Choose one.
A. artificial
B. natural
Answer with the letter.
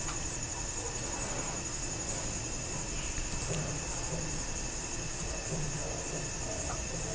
B